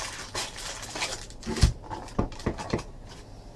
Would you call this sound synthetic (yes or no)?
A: no